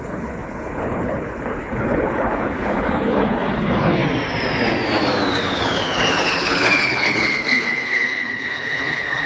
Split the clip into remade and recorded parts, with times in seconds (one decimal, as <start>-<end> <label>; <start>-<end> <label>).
0.0-4.0 remade; 4.0-5.4 recorded; 5.4-9.3 remade